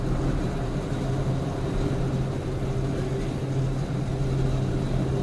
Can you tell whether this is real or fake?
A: real